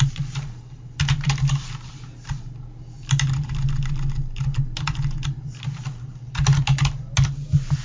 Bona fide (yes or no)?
yes